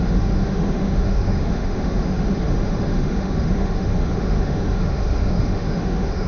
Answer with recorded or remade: remade